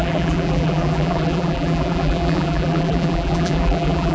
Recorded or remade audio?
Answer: remade